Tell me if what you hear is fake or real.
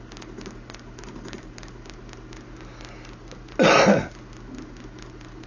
real